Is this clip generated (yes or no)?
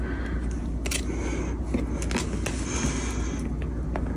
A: no